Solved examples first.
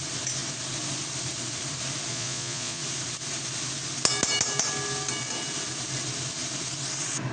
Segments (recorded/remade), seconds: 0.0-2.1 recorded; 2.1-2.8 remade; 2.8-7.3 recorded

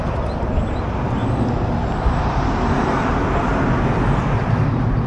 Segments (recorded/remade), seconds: 0.0-1.2 remade; 1.2-1.9 recorded; 1.9-3.5 remade; 3.5-4.6 recorded; 4.6-5.1 remade

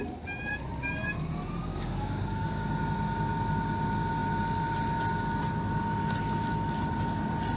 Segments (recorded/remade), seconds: 0.0-1.7 recorded; 1.7-2.7 remade; 2.7-7.6 recorded